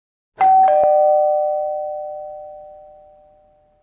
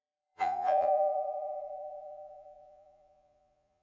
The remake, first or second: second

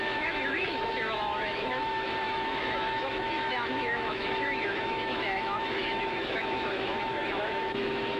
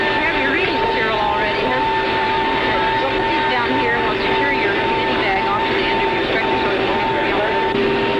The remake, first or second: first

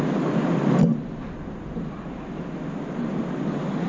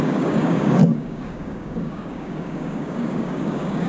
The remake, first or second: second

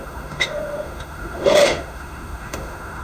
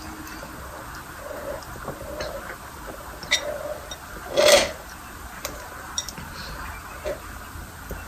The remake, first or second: first